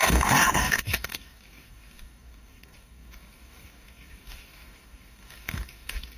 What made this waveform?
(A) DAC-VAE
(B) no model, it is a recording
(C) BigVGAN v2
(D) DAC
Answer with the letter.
D